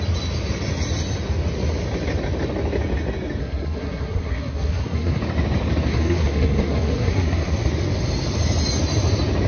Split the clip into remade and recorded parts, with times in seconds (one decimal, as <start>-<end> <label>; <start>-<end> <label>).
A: 0.0-3.4 recorded; 3.4-5.2 remade; 5.2-5.9 recorded; 5.9-7.7 remade; 7.7-9.5 recorded